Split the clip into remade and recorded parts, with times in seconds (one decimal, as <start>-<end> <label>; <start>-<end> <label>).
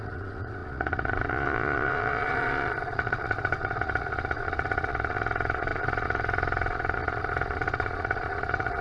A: 0.0-8.8 remade